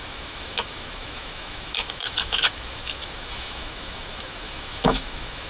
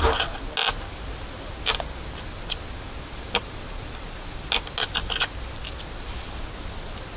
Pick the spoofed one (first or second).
first